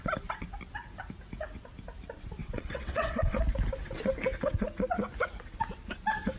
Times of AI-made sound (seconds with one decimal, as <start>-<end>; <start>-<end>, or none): 2.4-3.4